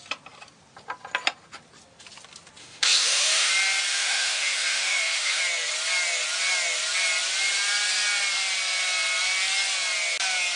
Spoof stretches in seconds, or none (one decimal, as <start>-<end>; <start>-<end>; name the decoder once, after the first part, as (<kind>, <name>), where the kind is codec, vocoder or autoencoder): 2.6-3.5 (autoencoder, DAC-VAE); 3.9-5.4